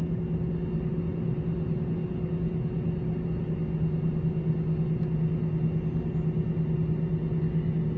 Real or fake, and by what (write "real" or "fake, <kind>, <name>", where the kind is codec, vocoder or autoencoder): real